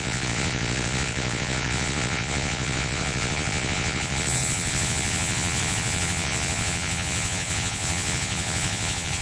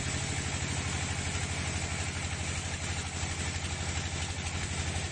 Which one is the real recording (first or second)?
second